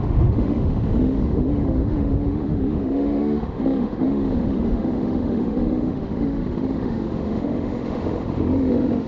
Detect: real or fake fake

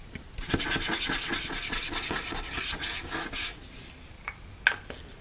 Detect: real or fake real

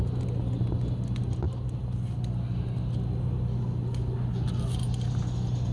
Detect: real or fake real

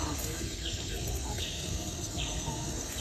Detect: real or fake fake